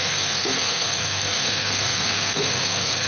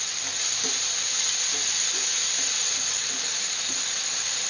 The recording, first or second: second